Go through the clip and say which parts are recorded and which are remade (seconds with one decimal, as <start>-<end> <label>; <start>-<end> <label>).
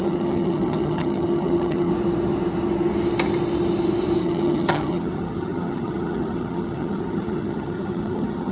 0.0-1.9 remade; 1.9-4.2 recorded; 4.2-8.5 remade